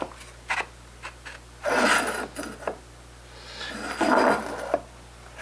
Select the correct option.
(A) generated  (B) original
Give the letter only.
B